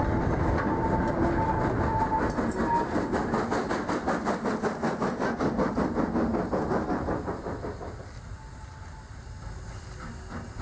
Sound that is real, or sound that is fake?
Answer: real